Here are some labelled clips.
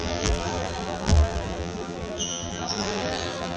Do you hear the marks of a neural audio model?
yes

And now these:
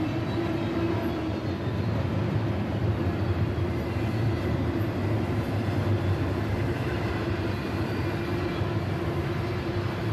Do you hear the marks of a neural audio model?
no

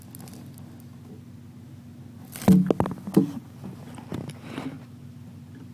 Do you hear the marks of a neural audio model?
no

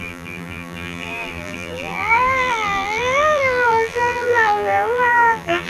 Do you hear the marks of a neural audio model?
yes